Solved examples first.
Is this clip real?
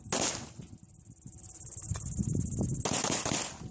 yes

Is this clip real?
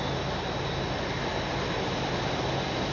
yes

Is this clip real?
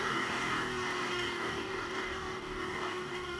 no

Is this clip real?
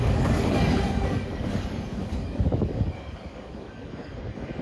no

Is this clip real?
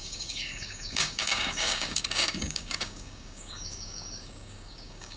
no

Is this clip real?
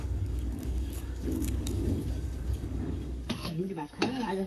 no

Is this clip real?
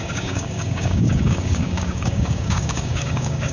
no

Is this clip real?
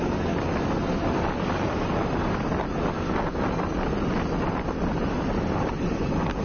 yes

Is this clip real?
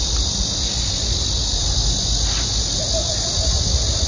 yes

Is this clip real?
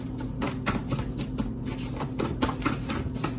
yes